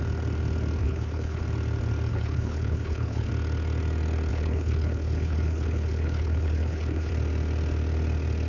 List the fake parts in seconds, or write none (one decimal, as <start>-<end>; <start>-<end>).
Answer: 0.8-1.4; 2.1-3.3; 4.3-7.1